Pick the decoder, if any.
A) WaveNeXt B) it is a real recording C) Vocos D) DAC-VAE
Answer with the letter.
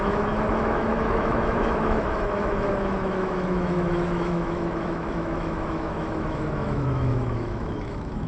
D